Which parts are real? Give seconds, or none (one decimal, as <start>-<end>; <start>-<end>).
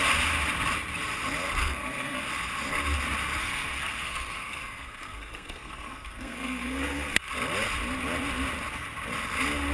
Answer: 0.0-1.6; 2.2-3.4; 7.3-9.7